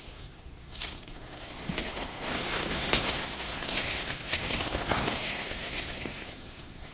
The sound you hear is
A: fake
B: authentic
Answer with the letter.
A